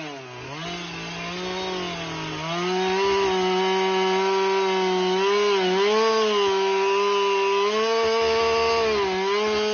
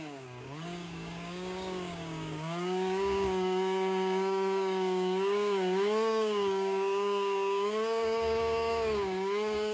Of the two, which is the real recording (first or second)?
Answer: first